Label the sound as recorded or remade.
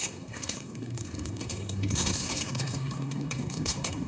remade